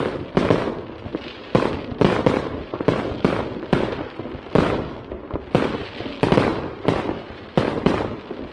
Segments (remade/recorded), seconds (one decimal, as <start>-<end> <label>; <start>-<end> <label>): 0.0-8.5 recorded